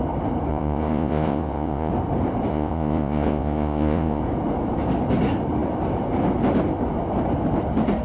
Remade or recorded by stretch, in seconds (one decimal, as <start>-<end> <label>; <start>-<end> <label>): 0.0-0.5 recorded; 0.5-1.9 remade; 1.9-2.5 recorded; 2.5-4.2 remade; 4.2-8.0 recorded